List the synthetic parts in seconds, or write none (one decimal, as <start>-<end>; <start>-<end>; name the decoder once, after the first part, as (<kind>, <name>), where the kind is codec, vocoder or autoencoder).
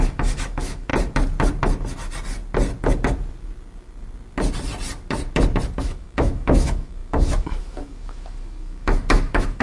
0.0-0.9 (autoencoder, DAC-VAE); 5.8-9.6